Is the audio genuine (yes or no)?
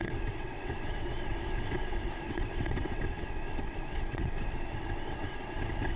no